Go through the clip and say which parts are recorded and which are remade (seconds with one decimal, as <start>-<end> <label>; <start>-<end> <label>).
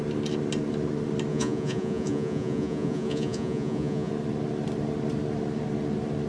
0.0-1.3 recorded; 1.3-4.1 remade; 4.1-6.3 recorded